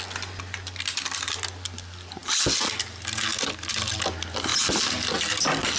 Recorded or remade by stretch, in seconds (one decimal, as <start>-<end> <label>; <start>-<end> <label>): 0.0-5.8 recorded